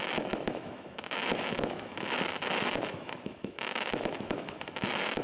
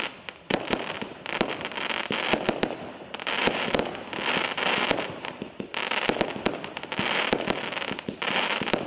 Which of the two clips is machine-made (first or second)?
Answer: first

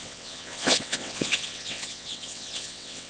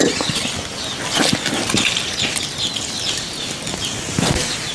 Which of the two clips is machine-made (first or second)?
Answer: first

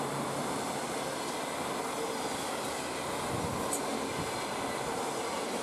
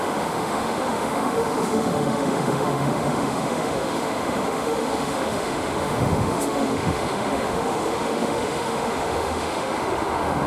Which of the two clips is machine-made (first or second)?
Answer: second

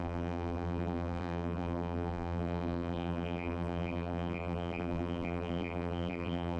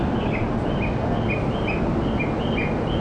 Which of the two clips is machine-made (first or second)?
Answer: first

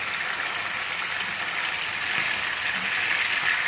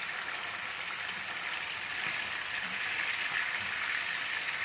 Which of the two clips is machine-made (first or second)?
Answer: second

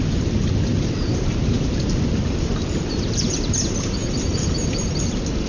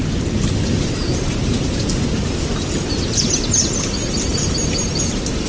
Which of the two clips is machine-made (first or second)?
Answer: first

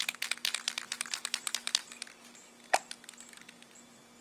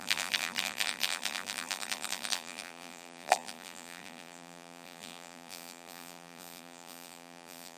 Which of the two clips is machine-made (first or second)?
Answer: second